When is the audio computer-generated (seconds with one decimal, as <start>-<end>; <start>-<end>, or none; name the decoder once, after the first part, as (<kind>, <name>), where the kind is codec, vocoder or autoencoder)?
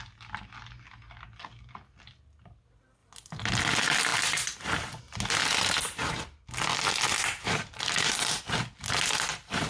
4.1-5.0 (vocoder, BigVGAN v2); 6.7-8.4